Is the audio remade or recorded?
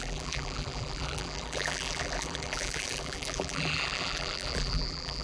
remade